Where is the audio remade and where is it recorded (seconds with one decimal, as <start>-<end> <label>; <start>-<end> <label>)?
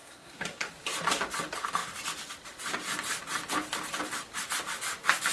0.0-0.7 remade; 0.7-5.3 recorded